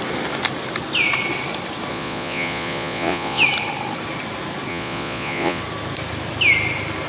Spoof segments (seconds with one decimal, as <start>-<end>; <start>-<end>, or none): 1.9-3.4; 4.7-5.6